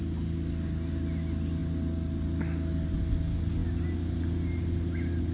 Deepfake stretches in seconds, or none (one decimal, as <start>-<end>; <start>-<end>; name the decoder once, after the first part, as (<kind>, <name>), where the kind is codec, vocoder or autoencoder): none